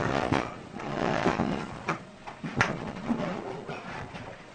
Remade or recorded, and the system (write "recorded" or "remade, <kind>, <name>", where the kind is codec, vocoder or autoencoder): remade, vocoder, Vocos